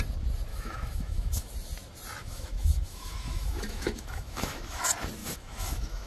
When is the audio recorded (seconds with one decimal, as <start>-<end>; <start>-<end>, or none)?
0.0-0.5; 1.5-2.2; 4.8-5.2